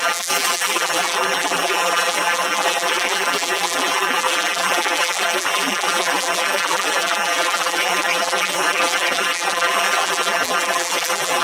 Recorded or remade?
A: remade